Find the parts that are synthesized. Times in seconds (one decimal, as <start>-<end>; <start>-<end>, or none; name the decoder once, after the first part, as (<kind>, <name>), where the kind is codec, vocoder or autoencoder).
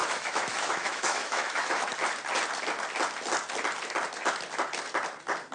0.0-1.9 (autoencoder, DAC-VAE)